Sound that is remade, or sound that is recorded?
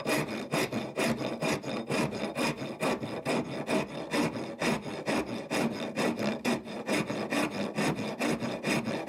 recorded